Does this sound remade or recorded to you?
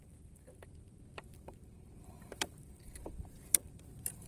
remade